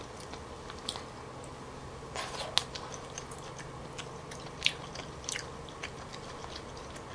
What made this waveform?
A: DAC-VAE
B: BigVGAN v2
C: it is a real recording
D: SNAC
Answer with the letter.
C